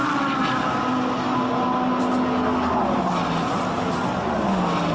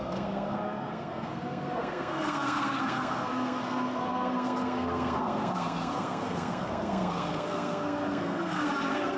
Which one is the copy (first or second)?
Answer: second